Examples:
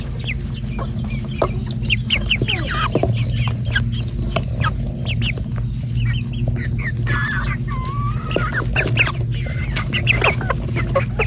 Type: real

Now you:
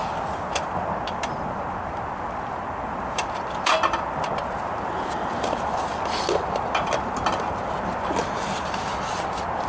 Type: real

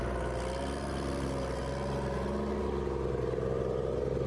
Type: real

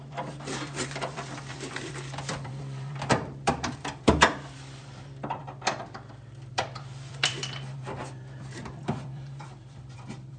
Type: fake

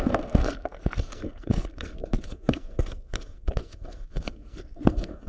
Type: fake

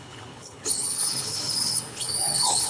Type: fake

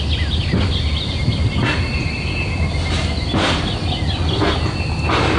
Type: real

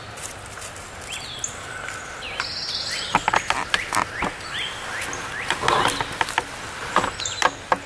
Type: real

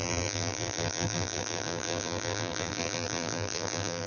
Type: fake